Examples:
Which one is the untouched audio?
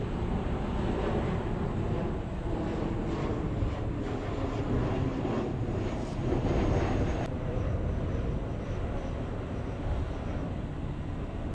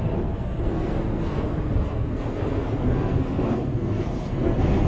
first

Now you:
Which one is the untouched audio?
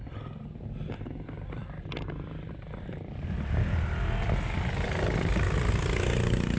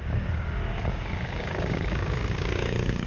first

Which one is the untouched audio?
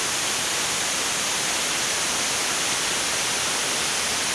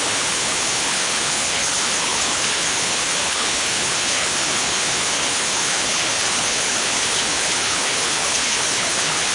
first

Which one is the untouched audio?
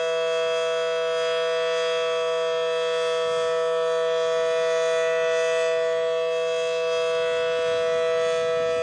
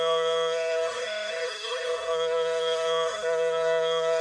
first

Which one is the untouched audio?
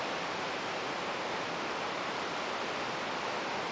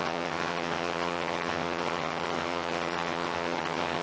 first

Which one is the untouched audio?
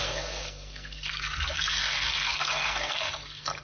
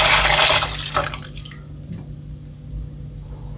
second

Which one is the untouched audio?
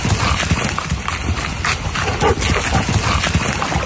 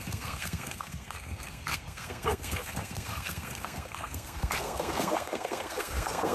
first